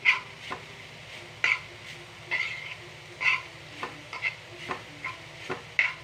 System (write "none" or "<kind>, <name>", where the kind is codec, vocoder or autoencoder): none